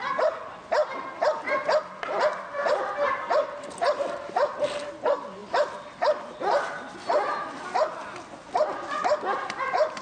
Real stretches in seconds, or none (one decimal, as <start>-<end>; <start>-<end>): 0.0-10.0